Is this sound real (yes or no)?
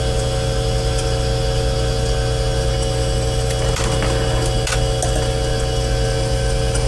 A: yes